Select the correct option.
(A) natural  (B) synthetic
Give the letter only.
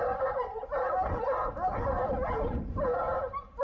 A